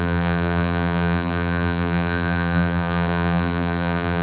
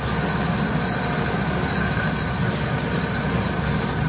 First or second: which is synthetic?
first